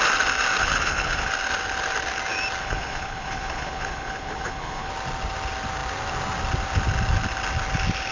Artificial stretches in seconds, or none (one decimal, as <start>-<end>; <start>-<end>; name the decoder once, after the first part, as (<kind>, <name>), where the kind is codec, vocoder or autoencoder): 0.6-1.3 (codec, HILCodec); 2.6-4.9